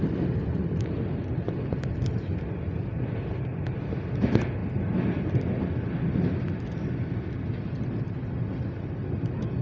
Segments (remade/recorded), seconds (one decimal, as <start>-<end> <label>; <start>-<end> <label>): 0.0-9.6 recorded